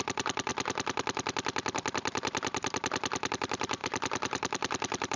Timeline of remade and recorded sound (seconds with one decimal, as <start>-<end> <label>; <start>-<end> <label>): 0.0-0.5 remade; 0.5-3.3 recorded; 3.3-5.2 remade